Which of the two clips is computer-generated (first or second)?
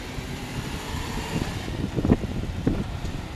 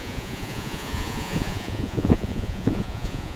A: second